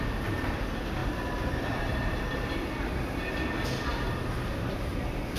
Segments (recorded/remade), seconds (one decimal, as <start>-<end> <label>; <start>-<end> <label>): 0.0-1.0 recorded; 1.0-3.2 remade; 3.2-3.9 recorded; 3.9-4.9 remade; 4.9-5.4 recorded